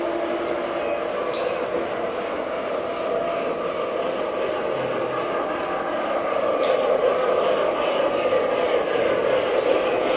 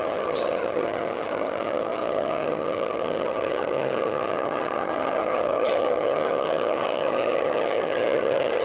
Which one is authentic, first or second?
first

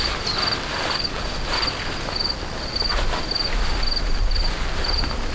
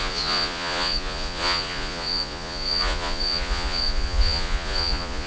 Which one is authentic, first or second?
first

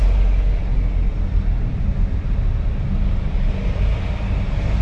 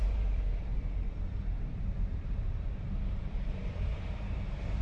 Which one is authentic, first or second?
first